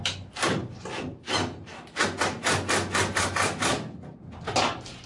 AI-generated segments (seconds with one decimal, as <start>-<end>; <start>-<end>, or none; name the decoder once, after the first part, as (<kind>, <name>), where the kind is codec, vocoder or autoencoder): none